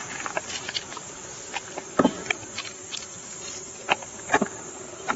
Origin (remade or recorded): remade